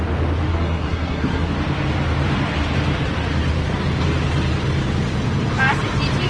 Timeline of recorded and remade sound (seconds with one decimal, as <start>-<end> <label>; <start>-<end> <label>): 0.0-0.5 recorded; 0.5-1.5 remade; 1.5-6.3 recorded